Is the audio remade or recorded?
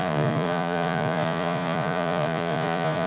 remade